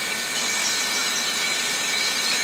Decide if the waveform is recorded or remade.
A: recorded